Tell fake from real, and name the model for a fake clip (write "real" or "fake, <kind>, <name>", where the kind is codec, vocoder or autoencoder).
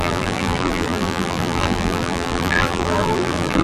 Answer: fake, vocoder, BigVGAN v2